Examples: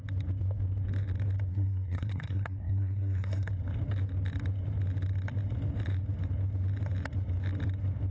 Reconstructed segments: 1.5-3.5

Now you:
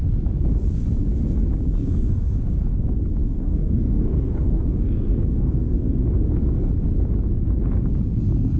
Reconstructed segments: 1.8-2.4; 3.2-5.8

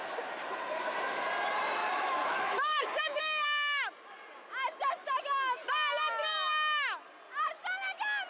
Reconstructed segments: 1.8-3.2